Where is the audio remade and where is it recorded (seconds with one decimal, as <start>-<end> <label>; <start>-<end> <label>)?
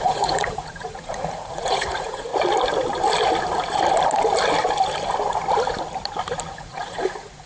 0.0-2.3 remade; 2.3-6.5 recorded; 6.5-7.5 remade